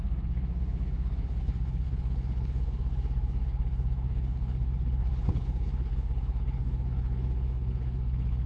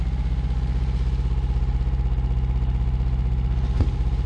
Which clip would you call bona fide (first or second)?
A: second